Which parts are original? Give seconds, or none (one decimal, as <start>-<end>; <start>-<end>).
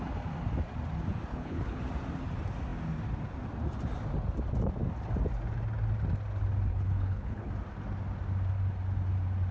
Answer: 0.0-1.3; 1.8-6.7; 7.5-9.5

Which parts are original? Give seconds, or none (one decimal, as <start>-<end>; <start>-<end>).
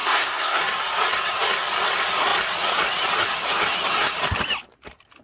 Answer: 0.6-5.2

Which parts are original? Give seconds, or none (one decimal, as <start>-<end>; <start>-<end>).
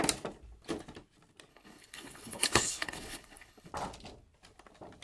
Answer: 0.0-1.5; 3.7-5.0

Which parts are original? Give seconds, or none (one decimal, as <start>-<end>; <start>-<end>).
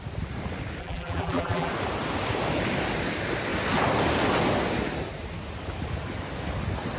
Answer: 0.0-0.8; 1.7-7.0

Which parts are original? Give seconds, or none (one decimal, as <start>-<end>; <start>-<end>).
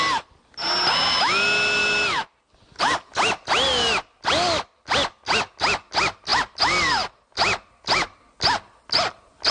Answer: 0.0-9.5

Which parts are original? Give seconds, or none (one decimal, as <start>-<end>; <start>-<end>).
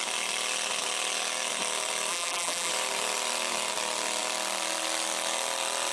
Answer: 0.0-2.1; 2.7-5.9